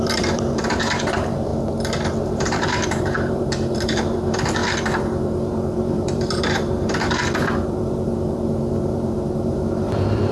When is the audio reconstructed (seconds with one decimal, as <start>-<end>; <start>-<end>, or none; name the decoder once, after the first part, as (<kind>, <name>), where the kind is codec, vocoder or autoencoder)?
0.0-1.5 (vocoder, BigVGAN v2); 2.2-10.3